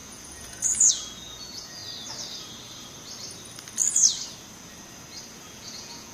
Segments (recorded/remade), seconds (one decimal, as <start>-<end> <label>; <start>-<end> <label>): 0.0-1.8 remade; 1.8-5.5 recorded; 5.5-6.1 remade